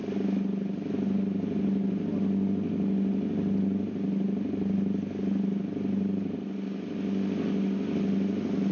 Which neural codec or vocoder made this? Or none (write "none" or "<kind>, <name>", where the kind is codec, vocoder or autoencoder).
none